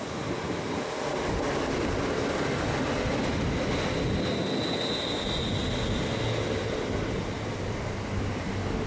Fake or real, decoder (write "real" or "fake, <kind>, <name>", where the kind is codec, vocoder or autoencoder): real